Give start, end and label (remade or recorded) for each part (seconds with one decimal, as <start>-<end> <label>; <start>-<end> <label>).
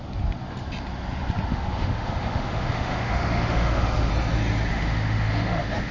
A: 0.0-1.5 recorded; 1.5-4.1 remade; 4.1-4.7 recorded; 4.7-5.9 remade